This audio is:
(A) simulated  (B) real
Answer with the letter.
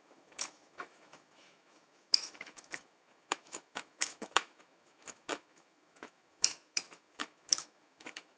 A